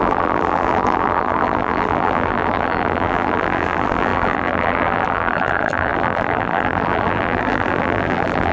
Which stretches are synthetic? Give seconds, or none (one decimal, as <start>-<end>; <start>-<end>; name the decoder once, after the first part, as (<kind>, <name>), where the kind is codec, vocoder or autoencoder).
0.0-8.5 (vocoder, BigVGAN v2)

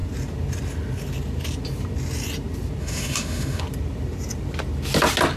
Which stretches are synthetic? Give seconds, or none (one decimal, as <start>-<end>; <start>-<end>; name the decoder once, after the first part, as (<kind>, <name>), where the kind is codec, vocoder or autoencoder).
2.8-3.6 (autoencoder, DAC-VAE)

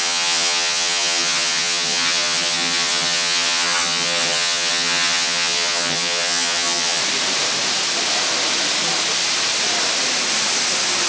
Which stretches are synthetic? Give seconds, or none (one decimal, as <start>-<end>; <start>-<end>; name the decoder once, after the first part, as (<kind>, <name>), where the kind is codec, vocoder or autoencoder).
0.0-7.0 (vocoder, HiFi-GAN)

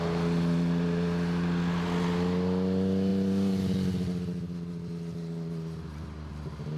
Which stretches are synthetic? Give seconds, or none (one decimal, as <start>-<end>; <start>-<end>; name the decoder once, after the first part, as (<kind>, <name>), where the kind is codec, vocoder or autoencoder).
none

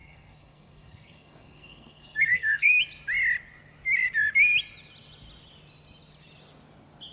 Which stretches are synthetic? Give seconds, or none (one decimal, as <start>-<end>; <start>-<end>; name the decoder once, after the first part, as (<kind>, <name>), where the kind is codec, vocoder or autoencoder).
0.0-2.8 (codec, SNAC)